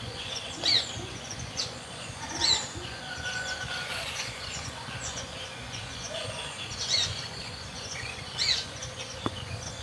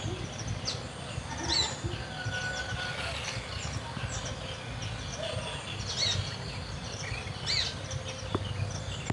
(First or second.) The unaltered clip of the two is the second